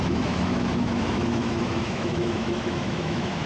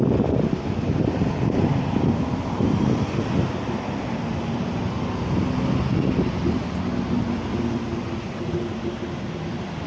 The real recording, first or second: second